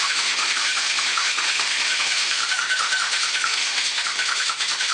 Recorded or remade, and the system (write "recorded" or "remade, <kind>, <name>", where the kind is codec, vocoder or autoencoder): remade, autoencoder, DAC-VAE